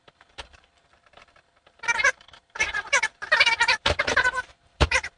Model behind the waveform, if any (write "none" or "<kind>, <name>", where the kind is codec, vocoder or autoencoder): vocoder, BigVGAN v2